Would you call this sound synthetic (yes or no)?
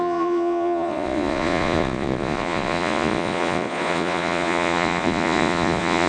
yes